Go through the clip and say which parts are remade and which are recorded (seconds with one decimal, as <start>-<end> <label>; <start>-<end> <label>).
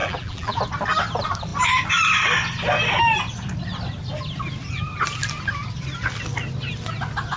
0.0-0.6 remade; 0.6-7.4 recorded